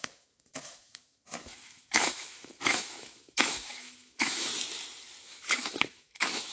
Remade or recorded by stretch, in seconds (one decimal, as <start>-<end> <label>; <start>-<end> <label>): 0.0-4.5 remade; 4.5-5.2 recorded; 5.2-6.5 remade